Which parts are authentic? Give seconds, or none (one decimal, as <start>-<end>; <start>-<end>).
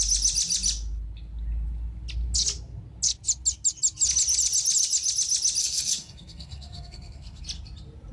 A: 0.0-5.6; 7.4-8.1